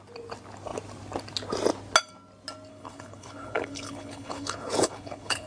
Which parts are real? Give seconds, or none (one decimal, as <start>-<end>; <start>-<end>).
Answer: 0.0-2.7